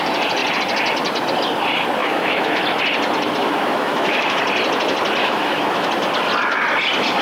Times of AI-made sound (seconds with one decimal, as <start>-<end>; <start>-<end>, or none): 2.0-2.6; 3.4-4.4; 5.2-5.9